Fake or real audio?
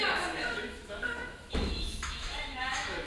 fake